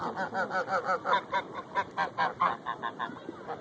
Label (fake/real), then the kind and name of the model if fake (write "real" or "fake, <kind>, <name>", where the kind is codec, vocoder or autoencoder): real